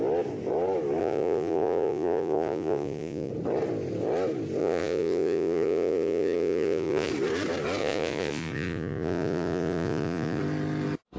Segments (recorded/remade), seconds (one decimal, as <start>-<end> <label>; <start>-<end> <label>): 0.0-1.0 recorded; 1.0-3.3 remade; 3.3-4.6 recorded; 4.6-7.1 remade; 7.1-7.8 recorded; 7.8-10.4 remade; 10.4-11.2 recorded